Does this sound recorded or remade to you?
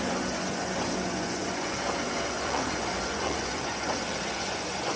remade